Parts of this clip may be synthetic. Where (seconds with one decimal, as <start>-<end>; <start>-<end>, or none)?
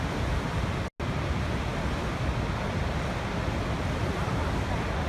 none